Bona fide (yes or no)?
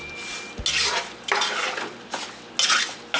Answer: yes